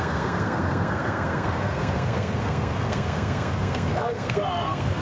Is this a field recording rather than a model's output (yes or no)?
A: no